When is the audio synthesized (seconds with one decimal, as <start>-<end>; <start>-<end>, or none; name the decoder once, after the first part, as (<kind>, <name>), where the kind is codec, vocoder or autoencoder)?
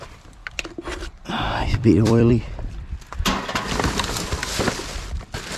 0.4-2.3 (vocoder, BigVGAN v2)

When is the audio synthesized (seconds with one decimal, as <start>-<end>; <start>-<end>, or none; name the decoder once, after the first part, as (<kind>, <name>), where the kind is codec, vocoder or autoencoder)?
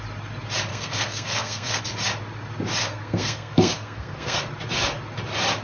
0.7-1.8 (codec, SNAC); 2.8-4.4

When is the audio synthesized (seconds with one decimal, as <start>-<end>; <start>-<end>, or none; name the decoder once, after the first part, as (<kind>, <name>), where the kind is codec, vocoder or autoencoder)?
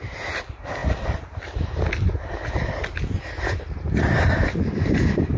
none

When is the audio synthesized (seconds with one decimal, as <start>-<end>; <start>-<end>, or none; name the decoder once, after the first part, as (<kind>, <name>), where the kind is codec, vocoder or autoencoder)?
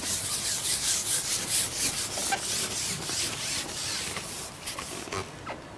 none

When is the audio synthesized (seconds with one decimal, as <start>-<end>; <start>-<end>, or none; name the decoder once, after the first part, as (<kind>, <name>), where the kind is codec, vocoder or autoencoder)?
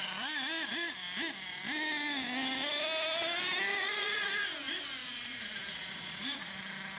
3.7-4.5 (vocoder, Vocos); 5.0-6.5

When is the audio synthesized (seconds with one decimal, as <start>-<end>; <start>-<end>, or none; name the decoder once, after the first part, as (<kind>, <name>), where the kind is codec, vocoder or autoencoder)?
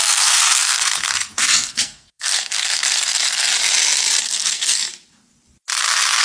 0.0-3.5 (codec, SNAC); 4.2-4.9